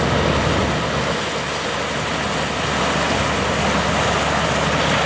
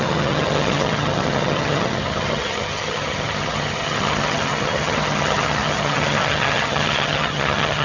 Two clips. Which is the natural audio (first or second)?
first